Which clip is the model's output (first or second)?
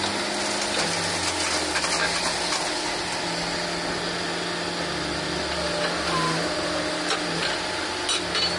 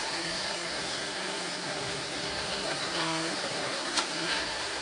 second